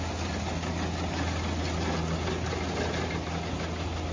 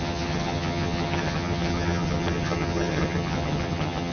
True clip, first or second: first